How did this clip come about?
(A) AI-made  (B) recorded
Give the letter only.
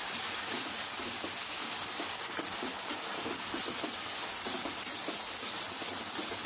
B